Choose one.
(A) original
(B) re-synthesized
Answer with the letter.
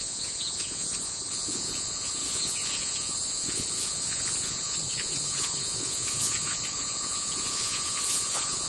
B